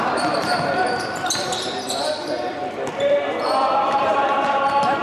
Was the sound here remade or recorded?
remade